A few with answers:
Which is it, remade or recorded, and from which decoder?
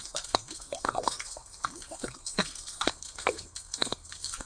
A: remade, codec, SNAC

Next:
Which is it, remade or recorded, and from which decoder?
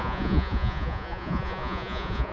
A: remade, vocoder, Vocos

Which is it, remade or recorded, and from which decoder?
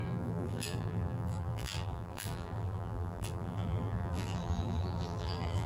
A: remade, vocoder, BigVGAN v2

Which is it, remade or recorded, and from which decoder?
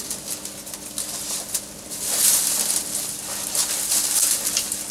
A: recorded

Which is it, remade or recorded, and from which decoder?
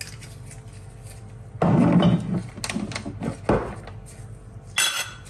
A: recorded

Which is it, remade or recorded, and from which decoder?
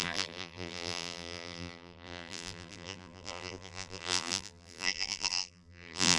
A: remade, vocoder, BigVGAN v2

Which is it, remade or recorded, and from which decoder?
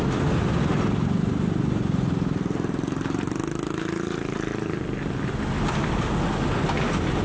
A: recorded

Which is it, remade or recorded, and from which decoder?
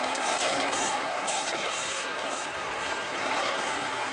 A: remade, codec, SNAC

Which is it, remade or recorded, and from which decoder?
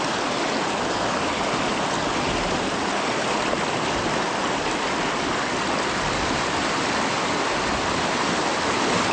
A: recorded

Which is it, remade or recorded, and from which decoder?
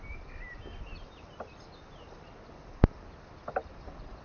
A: recorded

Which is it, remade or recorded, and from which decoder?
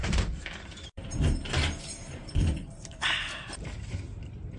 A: remade, vocoder, BigVGAN v2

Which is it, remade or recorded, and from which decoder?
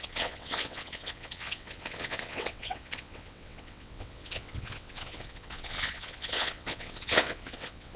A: remade, vocoder, WaveNeXt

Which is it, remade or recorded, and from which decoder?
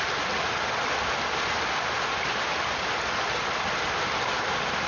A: recorded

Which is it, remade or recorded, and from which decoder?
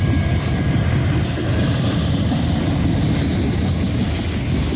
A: recorded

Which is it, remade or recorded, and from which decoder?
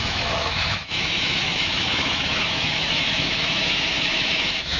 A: remade, autoencoder, DAC-VAE